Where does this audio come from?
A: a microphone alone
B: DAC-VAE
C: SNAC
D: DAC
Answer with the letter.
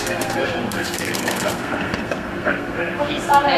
C